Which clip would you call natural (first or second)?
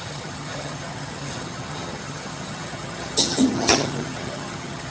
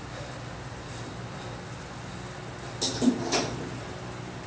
second